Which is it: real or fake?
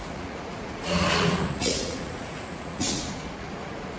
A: fake